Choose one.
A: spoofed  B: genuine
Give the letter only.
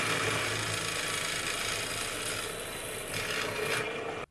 B